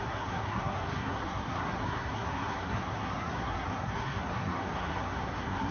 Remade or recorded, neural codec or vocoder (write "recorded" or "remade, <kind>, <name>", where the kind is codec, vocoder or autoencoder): remade, codec, SNAC